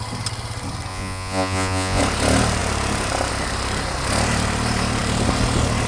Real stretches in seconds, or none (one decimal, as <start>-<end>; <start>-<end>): 0.0-0.9; 2.0-5.9